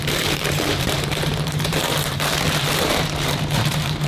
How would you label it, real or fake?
fake